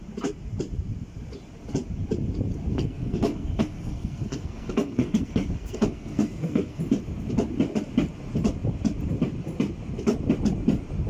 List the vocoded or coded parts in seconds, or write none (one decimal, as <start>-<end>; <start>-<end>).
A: 2.7-6.8